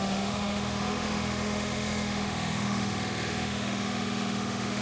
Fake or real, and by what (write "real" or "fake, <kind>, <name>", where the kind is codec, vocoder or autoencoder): fake, autoencoder, DAC-VAE